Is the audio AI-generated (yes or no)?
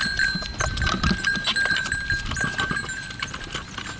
no